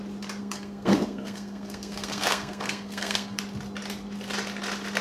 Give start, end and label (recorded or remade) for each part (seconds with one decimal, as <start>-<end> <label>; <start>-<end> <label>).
0.0-0.4 recorded; 0.4-3.4 remade; 3.4-5.0 recorded